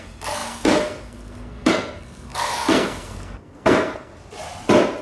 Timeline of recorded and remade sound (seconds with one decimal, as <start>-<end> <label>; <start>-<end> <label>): 0.0-4.1 remade; 4.1-5.0 recorded